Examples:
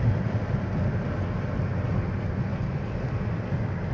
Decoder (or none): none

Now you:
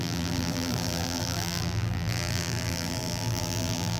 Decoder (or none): vocoder, BigVGAN v2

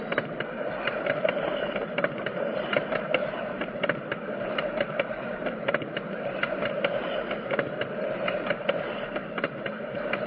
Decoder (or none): vocoder, BigVGAN v2